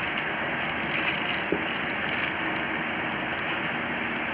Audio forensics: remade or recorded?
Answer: recorded